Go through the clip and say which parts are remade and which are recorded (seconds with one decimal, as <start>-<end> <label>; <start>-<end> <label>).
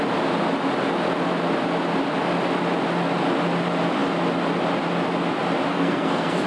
0.0-5.7 recorded; 5.7-6.5 remade